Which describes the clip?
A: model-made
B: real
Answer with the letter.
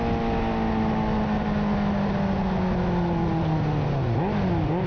B